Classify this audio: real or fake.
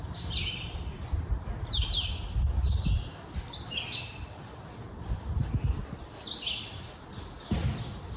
real